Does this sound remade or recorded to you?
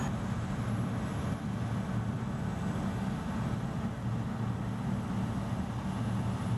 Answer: recorded